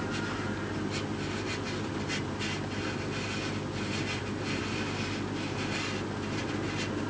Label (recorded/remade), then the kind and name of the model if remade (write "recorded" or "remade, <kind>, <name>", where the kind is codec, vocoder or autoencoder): recorded